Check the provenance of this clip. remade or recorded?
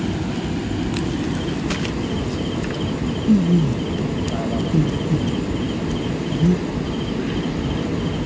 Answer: recorded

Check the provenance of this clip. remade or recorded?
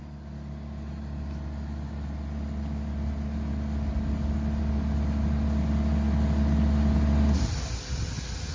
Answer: recorded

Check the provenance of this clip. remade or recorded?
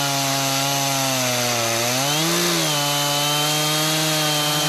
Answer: recorded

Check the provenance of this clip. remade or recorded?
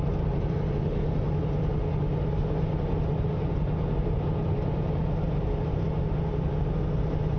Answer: recorded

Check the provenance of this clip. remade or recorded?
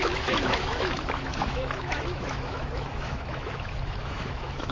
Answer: remade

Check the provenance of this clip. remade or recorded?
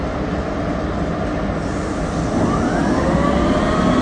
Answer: recorded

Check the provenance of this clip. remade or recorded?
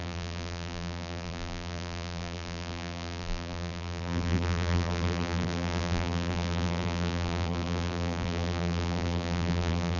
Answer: remade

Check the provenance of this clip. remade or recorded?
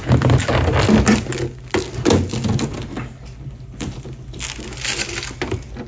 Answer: recorded